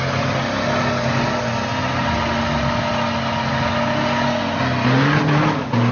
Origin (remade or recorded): recorded